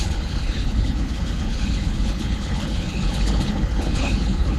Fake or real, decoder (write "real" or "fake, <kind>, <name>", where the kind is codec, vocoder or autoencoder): fake, codec, HILCodec